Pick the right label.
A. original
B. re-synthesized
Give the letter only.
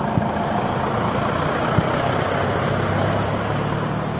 A